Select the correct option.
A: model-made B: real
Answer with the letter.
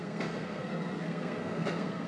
A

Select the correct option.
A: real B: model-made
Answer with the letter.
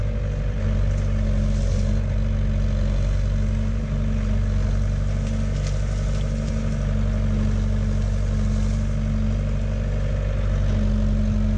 A